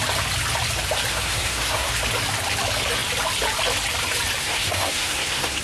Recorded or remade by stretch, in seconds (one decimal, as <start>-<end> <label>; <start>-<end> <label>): 0.0-1.1 recorded; 1.1-1.9 remade; 1.9-4.4 recorded; 4.4-5.6 remade